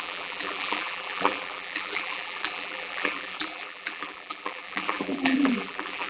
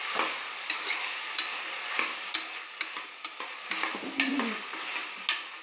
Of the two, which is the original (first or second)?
second